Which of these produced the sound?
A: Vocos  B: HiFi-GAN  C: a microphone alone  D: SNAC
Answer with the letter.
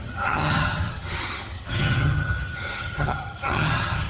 B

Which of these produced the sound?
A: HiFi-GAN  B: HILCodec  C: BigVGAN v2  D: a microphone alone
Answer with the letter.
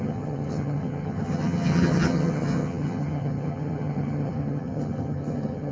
A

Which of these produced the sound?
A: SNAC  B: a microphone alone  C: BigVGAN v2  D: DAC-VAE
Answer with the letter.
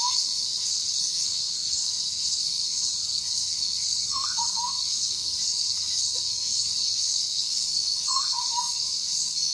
A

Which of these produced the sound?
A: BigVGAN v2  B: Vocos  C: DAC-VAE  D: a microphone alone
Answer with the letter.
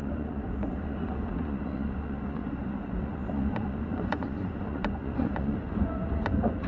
B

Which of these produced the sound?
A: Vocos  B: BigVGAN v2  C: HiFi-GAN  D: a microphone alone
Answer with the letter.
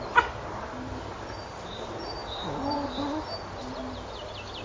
D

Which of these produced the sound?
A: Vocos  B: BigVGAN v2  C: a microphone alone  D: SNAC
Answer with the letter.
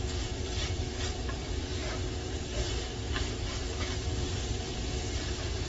B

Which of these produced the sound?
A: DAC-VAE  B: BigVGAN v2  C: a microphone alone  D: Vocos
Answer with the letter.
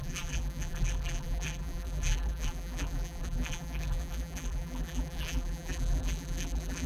B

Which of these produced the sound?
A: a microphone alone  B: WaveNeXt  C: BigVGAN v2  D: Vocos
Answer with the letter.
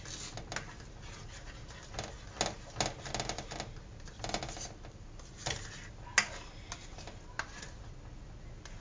A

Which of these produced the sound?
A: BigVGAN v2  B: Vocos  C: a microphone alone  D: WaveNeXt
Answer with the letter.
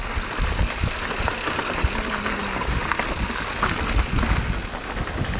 C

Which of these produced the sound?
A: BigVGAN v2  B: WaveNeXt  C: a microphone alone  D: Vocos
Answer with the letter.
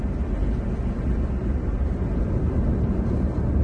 C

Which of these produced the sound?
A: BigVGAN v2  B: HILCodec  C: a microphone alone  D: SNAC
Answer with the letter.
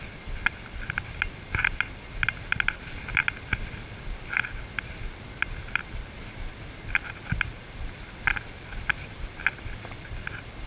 C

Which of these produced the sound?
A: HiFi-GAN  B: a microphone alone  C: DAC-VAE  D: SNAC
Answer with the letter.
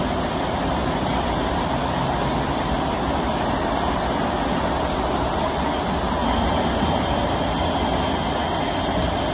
B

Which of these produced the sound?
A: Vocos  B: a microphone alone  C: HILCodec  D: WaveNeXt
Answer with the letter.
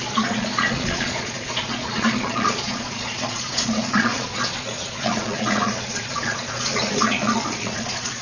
A